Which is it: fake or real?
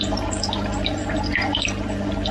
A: real